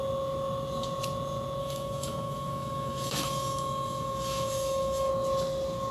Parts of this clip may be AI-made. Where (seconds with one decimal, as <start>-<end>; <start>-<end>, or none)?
1.6-5.1